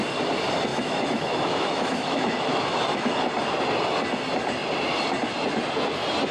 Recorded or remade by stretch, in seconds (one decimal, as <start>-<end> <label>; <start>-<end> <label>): 0.0-0.7 recorded; 0.7-3.1 remade; 3.1-6.3 recorded

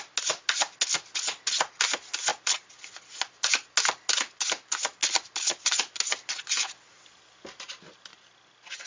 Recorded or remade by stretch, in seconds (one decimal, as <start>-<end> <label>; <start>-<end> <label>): 0.0-8.9 recorded

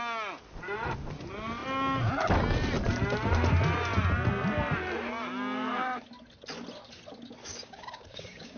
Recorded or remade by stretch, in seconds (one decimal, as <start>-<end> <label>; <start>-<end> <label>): 0.0-7.5 recorded; 7.5-8.6 remade